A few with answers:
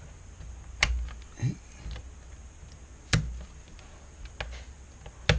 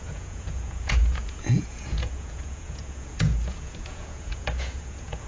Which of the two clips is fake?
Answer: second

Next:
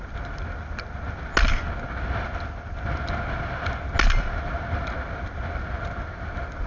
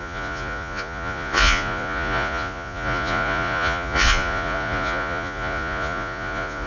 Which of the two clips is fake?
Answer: second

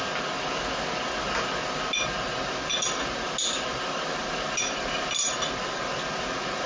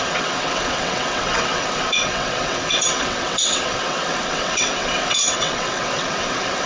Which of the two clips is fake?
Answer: second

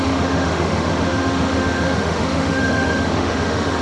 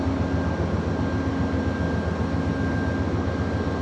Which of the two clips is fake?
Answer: first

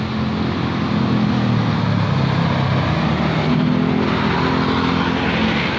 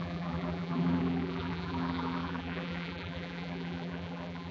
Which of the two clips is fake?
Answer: second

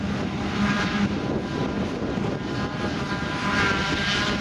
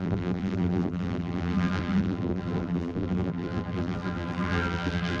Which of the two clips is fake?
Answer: second